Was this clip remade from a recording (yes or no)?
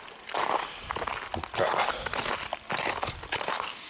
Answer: no